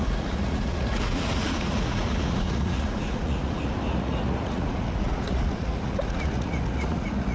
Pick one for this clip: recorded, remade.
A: remade